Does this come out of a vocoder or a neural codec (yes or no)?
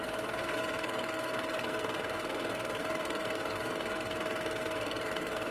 yes